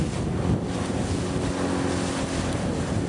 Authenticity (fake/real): real